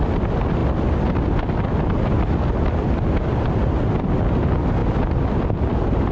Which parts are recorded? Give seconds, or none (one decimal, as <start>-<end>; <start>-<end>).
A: 0.0-6.1

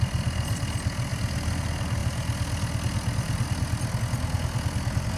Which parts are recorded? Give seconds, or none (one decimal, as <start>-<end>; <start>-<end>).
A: 0.0-5.2